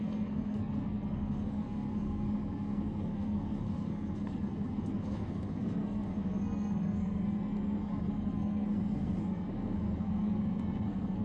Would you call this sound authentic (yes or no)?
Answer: no